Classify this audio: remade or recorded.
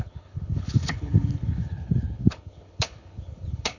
remade